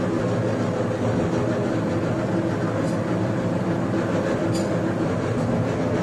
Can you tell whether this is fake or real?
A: real